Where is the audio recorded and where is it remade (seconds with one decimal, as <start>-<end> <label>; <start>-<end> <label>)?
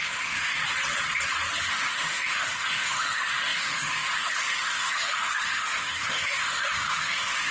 0.0-0.6 remade; 0.6-1.6 recorded; 1.6-7.5 remade